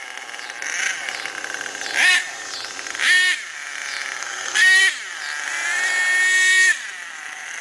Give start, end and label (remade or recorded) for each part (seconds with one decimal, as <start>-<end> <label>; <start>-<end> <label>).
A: 0.0-4.2 recorded; 4.2-4.8 remade; 4.8-7.6 recorded